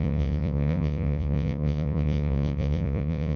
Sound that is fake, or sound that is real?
fake